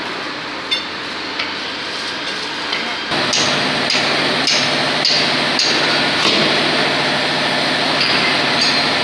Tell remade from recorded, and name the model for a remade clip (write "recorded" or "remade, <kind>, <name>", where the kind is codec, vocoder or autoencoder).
recorded